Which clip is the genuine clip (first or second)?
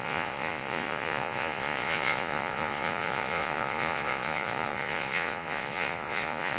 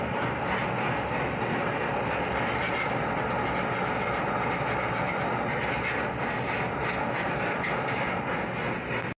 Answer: second